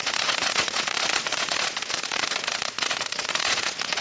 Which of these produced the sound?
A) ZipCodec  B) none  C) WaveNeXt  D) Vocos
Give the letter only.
D